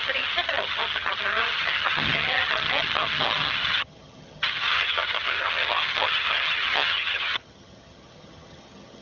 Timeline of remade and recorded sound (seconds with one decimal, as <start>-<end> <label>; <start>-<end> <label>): 0.0-9.0 remade